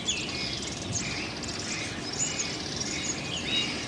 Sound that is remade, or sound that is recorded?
recorded